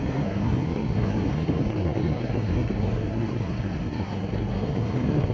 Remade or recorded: remade